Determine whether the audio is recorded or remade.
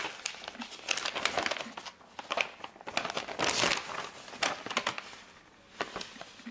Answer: recorded